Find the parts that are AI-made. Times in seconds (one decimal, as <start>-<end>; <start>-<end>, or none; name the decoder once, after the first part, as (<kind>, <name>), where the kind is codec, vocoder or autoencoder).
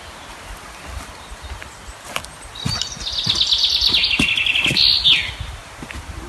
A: none